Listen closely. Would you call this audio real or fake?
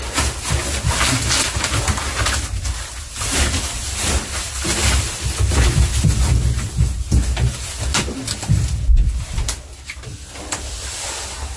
real